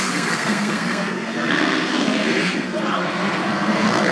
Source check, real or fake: fake